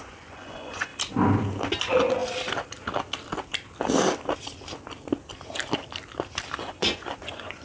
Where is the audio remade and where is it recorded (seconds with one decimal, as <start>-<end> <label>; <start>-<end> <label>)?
0.0-0.9 remade; 0.9-1.8 recorded; 1.8-2.2 remade; 2.2-6.6 recorded; 6.6-7.6 remade